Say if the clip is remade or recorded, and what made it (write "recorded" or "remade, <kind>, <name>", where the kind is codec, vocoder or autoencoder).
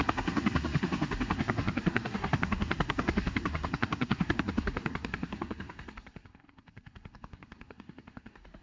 remade, codec, SNAC